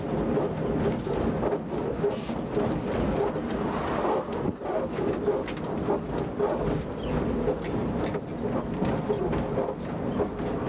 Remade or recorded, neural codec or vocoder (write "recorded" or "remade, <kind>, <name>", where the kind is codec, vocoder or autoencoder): recorded